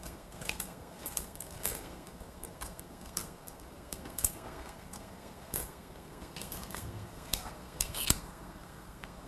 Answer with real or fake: fake